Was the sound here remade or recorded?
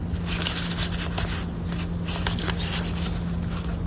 recorded